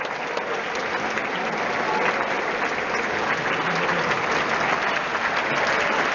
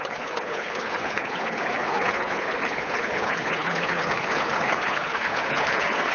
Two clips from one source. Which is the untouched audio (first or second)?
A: first